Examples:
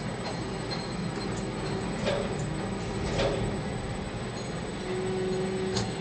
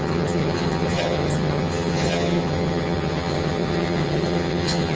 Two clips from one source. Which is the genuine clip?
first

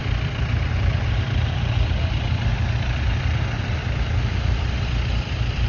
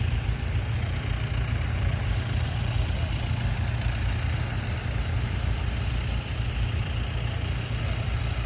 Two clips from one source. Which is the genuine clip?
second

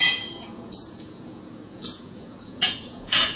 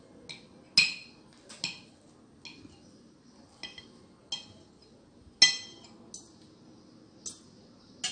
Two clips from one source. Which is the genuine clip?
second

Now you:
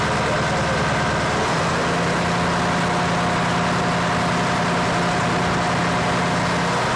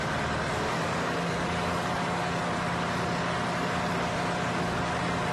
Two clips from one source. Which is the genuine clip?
first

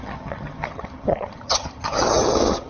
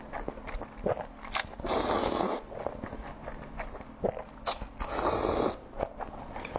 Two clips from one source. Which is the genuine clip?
second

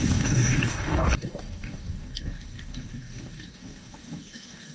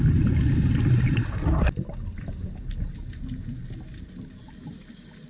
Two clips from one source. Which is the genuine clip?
second